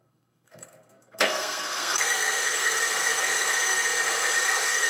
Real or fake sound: fake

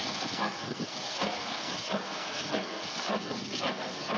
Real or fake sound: fake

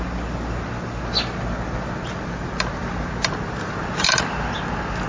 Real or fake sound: real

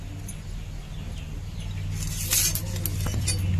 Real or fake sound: real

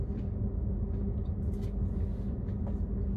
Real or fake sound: real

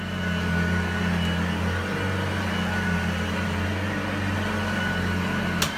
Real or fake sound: real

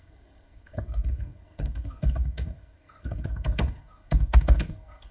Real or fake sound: fake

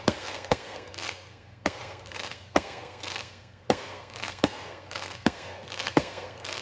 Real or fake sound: fake